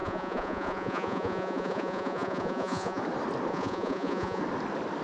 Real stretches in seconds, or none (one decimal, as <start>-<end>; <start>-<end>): 3.0-3.5; 4.4-5.0